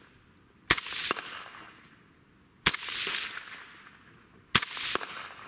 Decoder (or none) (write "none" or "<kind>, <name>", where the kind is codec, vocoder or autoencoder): none